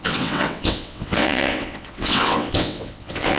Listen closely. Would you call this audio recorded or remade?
remade